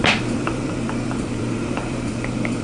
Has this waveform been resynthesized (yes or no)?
yes